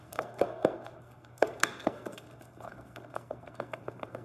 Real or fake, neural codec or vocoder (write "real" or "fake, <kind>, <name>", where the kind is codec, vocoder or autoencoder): fake, codec, SNAC